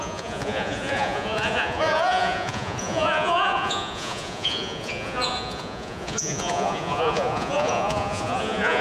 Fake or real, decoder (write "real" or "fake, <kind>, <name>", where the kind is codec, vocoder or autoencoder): fake, vocoder, Vocos